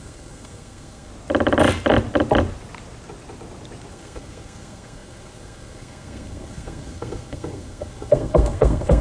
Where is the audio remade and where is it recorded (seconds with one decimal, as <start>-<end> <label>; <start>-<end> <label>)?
0.0-1.1 remade; 1.1-3.9 recorded; 3.9-9.0 remade